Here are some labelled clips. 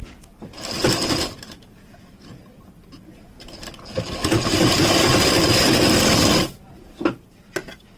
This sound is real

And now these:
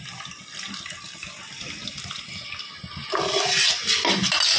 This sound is real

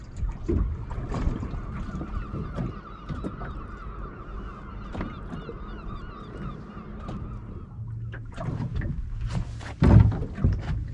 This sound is real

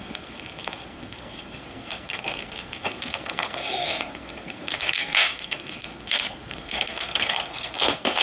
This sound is fake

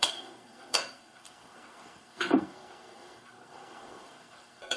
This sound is fake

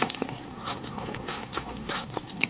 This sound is fake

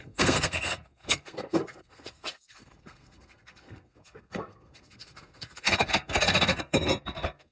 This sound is fake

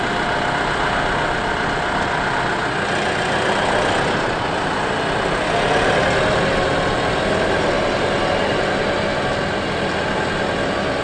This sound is real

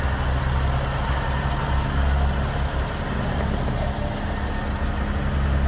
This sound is real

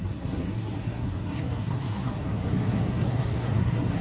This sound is fake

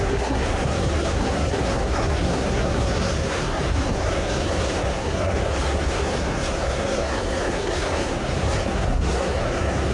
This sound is fake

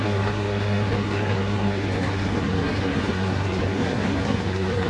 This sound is fake